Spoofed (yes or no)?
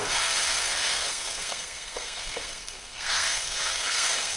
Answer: yes